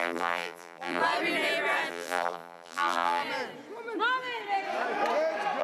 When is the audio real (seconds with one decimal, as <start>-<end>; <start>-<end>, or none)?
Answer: 1.0-1.9; 3.2-5.6